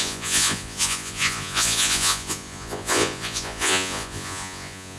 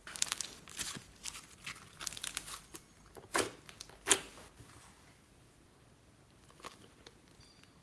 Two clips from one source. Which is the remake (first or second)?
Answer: first